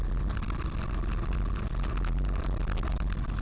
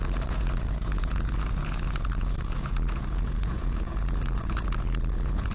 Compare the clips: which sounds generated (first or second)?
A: second